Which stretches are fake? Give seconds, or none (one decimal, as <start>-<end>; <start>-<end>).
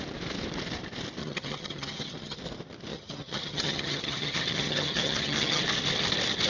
1.2-2.4; 2.9-5.6